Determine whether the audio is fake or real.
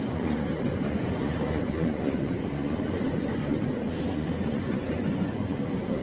fake